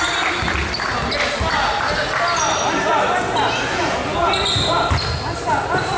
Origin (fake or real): real